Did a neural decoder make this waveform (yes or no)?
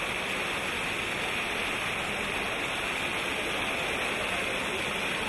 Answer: no